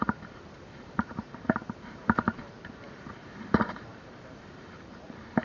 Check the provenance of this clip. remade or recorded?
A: remade